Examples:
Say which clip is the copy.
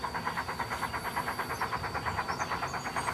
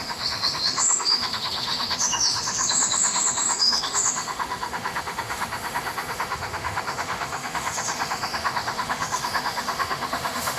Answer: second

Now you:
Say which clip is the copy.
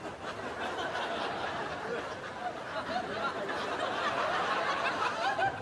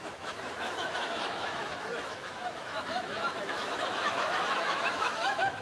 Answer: second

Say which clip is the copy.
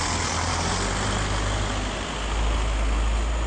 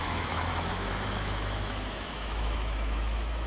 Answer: second